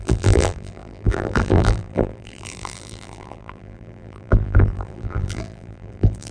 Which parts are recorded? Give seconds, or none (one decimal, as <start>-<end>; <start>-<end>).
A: none